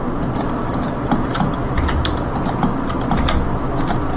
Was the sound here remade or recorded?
recorded